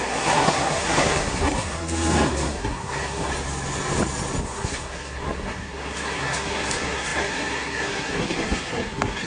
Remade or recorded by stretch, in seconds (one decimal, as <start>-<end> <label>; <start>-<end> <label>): 0.0-3.3 remade; 3.3-4.4 recorded; 4.4-9.3 remade